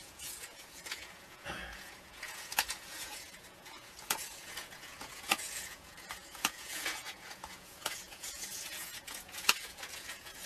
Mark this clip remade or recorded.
remade